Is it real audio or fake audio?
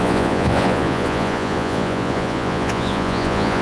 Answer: fake